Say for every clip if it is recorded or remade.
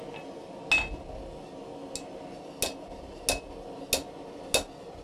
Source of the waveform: recorded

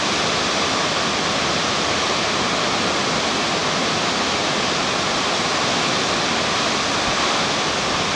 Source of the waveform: recorded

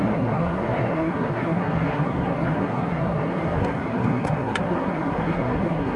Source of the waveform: remade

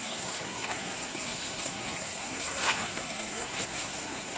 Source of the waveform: remade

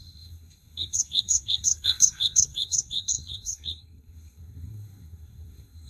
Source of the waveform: remade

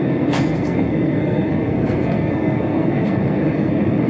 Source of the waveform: remade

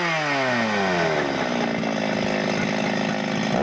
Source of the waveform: recorded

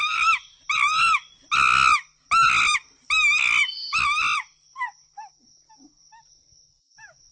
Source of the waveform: recorded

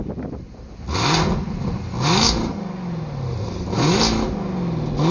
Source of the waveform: recorded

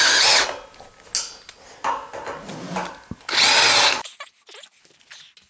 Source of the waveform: recorded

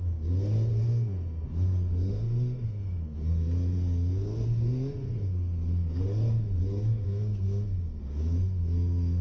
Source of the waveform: remade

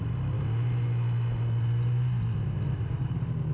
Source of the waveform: recorded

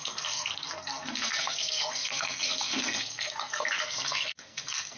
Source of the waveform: remade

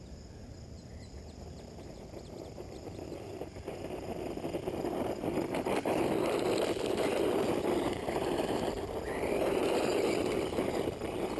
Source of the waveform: recorded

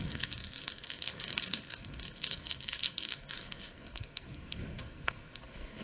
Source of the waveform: remade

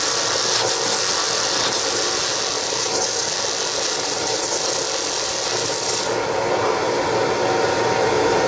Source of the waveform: recorded